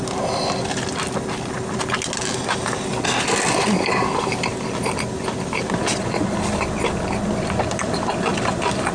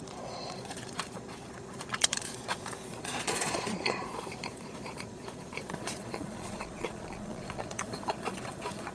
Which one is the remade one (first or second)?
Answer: second